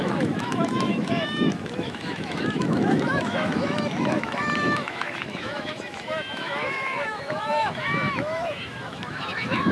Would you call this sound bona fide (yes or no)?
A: no